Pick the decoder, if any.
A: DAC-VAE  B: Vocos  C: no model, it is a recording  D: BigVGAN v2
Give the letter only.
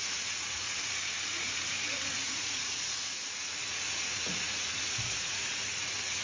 B